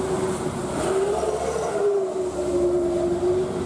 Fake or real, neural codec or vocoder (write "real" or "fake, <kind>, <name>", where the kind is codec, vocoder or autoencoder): real